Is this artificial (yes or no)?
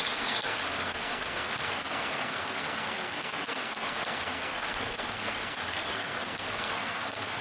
yes